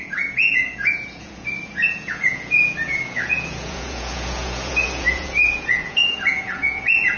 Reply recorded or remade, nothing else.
remade